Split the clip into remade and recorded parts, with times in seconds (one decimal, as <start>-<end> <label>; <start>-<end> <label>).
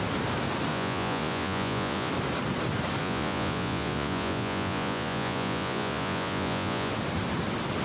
0.0-0.7 recorded; 0.7-2.1 remade; 2.1-3.0 recorded; 3.0-6.9 remade; 6.9-7.8 recorded